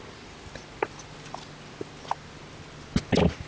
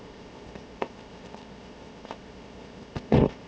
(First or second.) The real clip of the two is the first